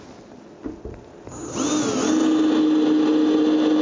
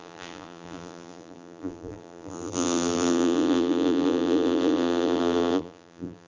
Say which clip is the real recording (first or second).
first